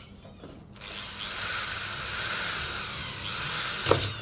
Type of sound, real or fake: real